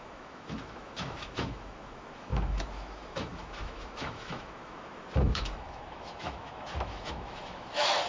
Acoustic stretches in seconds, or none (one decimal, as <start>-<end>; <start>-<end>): none